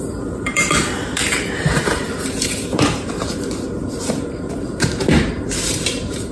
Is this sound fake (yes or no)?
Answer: yes